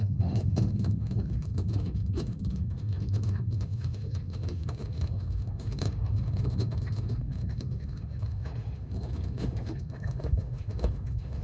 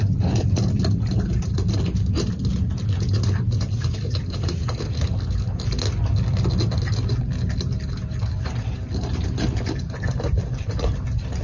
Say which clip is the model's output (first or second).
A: first